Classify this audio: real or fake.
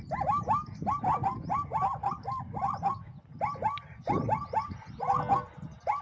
real